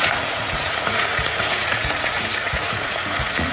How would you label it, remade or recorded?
remade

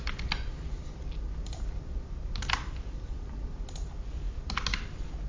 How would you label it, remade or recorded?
recorded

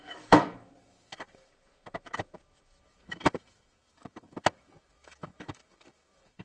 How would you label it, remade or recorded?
remade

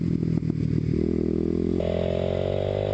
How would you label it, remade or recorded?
recorded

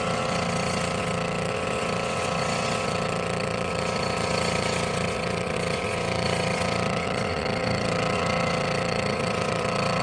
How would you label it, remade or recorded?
remade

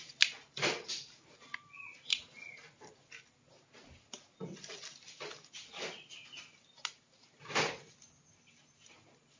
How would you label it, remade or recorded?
recorded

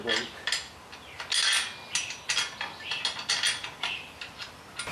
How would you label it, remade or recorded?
recorded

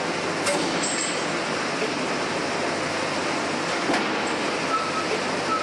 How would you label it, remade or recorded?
recorded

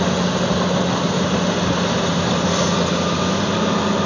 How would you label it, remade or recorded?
recorded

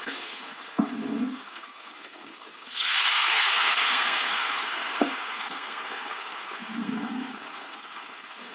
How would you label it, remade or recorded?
remade